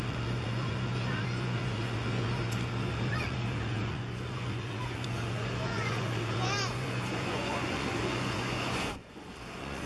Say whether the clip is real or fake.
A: fake